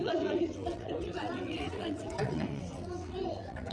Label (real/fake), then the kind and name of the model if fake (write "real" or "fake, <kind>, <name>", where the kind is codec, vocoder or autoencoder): fake, vocoder, WaveNeXt